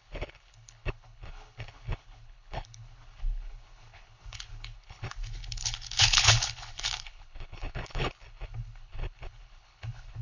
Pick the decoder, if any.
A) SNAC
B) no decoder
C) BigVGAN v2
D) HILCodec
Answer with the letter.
D